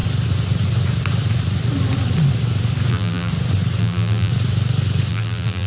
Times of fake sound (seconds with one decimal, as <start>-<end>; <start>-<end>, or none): 2.9-3.3; 3.8-4.3; 5.1-5.7